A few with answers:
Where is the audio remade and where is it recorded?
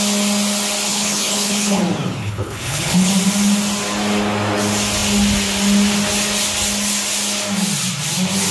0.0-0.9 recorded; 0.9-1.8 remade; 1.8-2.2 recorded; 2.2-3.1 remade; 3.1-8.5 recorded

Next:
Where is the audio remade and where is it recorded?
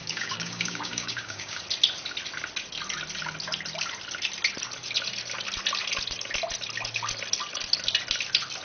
0.0-1.6 remade; 1.6-8.6 recorded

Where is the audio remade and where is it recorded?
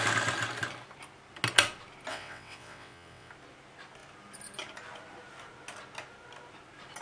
0.0-2.1 recorded; 2.1-3.3 remade; 3.3-7.0 recorded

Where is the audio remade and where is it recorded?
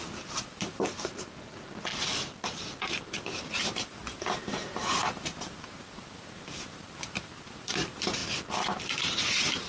0.0-1.9 remade; 1.9-2.9 recorded; 2.9-4.0 remade; 4.0-4.7 recorded; 4.7-8.2 remade; 8.2-9.0 recorded; 9.0-9.7 remade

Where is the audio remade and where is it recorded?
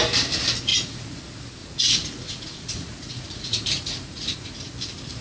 0.0-0.7 recorded; 0.7-1.2 remade; 1.2-1.6 recorded; 1.6-4.7 remade; 4.7-5.2 recorded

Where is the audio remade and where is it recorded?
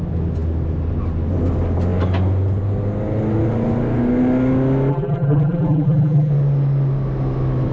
0.0-4.9 recorded; 4.9-6.3 remade; 6.3-7.7 recorded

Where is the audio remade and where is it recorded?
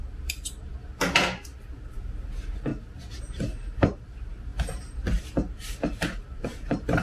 0.0-0.7 remade; 0.7-1.7 recorded; 1.7-2.7 remade; 2.7-3.2 recorded; 3.2-7.0 remade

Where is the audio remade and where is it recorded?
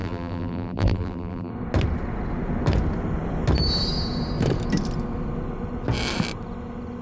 0.0-1.5 remade; 1.5-7.0 recorded